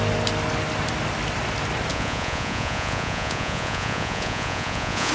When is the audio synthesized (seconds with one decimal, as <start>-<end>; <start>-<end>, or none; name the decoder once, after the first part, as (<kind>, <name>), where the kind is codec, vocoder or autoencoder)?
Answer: 1.9-5.1 (vocoder, Vocos)